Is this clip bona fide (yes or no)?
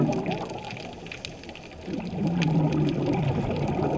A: yes